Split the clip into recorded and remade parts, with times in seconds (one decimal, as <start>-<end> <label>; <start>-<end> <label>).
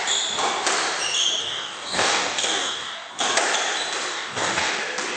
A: 0.0-1.4 recorded; 1.4-3.2 remade; 3.2-4.1 recorded; 4.1-4.8 remade; 4.8-5.2 recorded